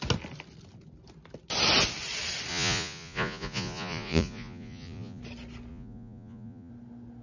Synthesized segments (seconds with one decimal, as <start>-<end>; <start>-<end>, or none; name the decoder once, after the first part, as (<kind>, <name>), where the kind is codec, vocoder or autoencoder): 2.5-5.2 (vocoder, Vocos); 5.7-6.7